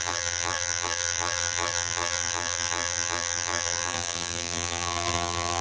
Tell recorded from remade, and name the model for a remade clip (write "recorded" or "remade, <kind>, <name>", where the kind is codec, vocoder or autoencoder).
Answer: remade, vocoder, BigVGAN v2